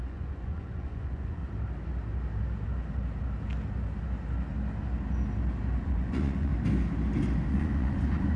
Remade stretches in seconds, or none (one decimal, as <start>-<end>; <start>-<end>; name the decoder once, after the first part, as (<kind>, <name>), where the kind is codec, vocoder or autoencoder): 0.0-1.4 (vocoder, Vocos); 5.8-6.5; 7.5-8.4